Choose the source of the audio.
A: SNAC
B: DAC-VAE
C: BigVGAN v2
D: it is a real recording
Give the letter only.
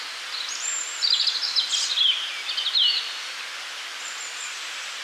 D